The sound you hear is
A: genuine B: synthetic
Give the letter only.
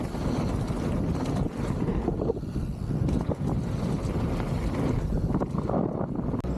A